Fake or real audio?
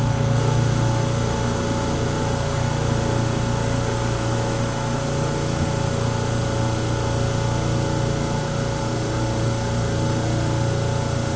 real